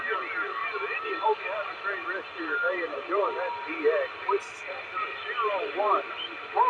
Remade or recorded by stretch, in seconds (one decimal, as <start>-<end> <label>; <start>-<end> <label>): 0.0-6.7 recorded